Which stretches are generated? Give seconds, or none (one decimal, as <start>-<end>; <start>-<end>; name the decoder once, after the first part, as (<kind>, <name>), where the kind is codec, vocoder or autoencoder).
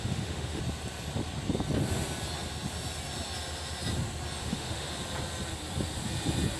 0.0-0.6 (autoencoder, DAC-VAE); 4.4-4.9